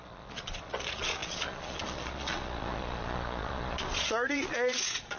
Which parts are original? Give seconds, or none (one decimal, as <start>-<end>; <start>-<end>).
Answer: none